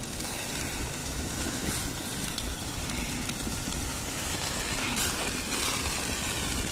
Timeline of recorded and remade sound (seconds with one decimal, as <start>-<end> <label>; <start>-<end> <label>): 0.0-1.0 recorded; 1.0-1.7 remade; 1.7-3.9 recorded; 3.9-4.6 remade; 4.6-6.7 recorded